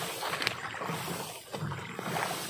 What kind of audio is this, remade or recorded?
recorded